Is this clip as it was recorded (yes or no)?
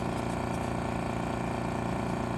yes